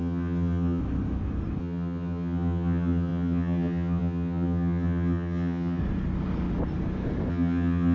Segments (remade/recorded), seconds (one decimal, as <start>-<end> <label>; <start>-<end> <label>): 0.0-0.8 remade; 0.8-1.6 recorded; 1.6-5.8 remade; 5.8-7.3 recorded; 7.3-7.9 remade